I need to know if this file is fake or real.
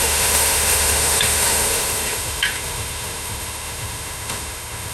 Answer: fake